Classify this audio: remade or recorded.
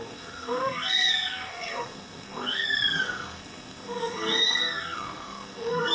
remade